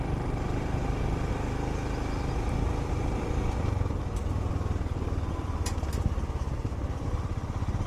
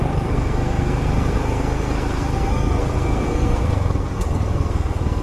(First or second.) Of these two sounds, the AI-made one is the second